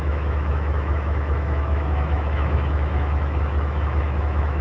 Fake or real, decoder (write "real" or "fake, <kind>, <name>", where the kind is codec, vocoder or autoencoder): fake, autoencoder, DAC-VAE